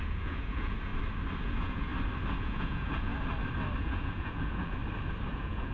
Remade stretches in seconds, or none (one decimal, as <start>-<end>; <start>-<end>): 0.0-0.9; 1.4-1.9; 2.4-3.1; 3.8-4.8; 5.3-5.7